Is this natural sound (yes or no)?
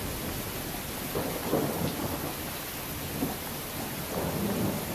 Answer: yes